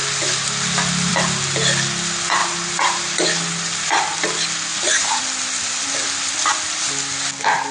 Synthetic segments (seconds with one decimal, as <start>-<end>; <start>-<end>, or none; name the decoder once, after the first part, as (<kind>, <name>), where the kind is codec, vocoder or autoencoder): 2.4-3.0 (vocoder, BigVGAN v2); 4.7-5.2